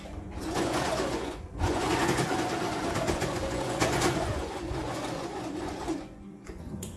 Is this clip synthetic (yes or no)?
yes